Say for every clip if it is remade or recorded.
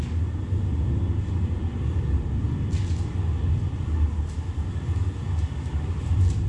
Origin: recorded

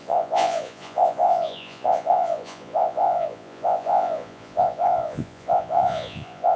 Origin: remade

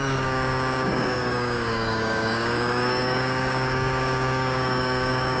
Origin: remade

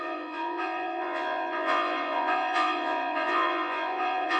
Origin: remade